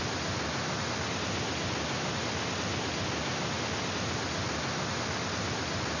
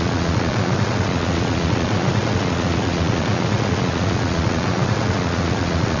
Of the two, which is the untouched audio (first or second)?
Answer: first